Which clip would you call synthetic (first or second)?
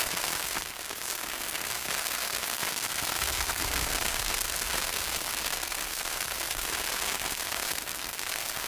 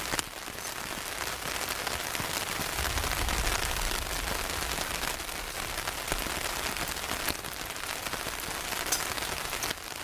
first